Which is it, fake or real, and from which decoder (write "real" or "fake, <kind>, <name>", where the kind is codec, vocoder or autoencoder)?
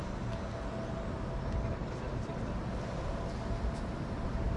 real